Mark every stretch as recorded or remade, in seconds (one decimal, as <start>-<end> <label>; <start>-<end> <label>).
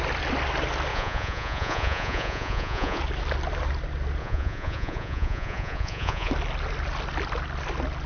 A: 0.0-0.9 recorded; 0.9-3.0 remade; 3.0-4.2 recorded; 4.2-6.3 remade; 6.3-8.1 recorded